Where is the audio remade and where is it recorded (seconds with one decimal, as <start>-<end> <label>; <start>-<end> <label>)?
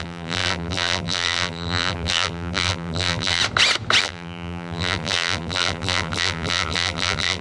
0.0-3.4 remade; 3.4-4.0 recorded; 4.0-7.4 remade